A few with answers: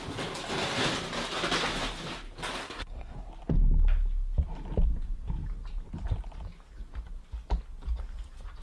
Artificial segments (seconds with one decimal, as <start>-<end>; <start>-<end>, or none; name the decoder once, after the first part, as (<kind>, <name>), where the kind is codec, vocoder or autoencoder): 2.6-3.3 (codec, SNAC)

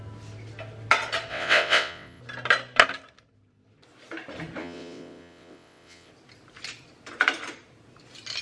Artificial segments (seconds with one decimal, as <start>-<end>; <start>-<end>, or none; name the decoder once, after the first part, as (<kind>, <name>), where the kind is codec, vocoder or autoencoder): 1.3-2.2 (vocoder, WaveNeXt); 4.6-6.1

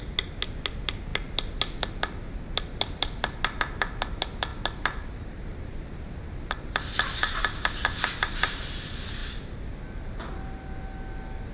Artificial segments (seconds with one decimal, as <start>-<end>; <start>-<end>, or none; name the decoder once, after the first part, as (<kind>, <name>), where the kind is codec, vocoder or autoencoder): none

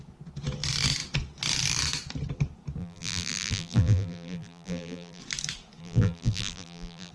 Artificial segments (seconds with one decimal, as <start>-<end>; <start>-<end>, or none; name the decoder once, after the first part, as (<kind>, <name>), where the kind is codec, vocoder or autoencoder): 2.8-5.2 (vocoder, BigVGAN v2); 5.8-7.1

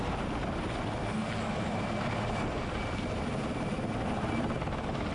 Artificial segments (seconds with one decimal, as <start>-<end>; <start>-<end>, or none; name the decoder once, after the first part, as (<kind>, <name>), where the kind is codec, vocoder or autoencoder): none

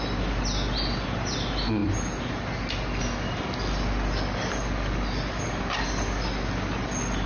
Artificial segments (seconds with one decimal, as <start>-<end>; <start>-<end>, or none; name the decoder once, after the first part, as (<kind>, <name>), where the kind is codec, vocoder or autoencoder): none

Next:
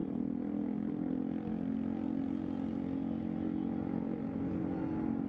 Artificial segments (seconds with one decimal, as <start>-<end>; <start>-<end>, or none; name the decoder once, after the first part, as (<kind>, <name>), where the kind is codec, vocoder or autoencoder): none